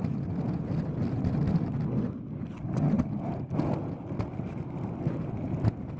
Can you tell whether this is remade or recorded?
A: recorded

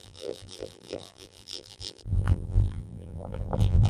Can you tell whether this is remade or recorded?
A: remade